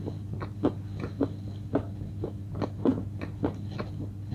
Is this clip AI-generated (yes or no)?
no